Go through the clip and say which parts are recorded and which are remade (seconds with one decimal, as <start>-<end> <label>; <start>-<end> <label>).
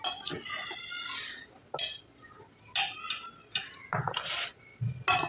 0.0-5.3 recorded